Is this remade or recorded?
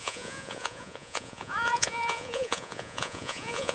remade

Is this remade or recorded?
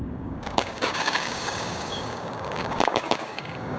remade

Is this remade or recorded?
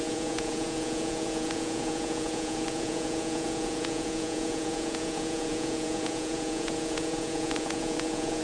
remade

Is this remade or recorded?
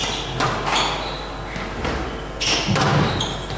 recorded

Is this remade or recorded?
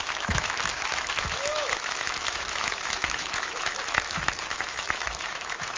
remade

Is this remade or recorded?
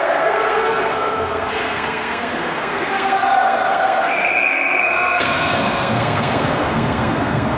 remade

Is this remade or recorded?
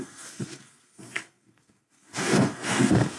remade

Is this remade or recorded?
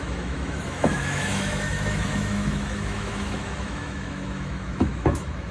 remade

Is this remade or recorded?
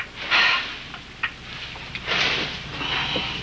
recorded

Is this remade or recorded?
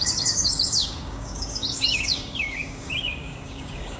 remade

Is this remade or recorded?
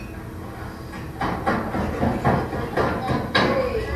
recorded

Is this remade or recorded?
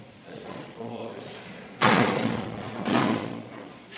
remade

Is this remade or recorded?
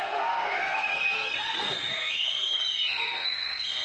remade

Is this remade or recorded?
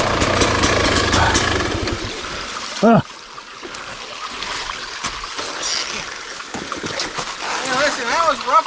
recorded